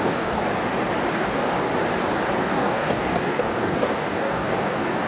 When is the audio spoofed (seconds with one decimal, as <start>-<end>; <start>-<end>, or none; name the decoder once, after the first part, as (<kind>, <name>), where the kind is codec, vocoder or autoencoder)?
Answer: 0.0-0.4 (codec, DAC); 1.1-1.7; 2.4-5.1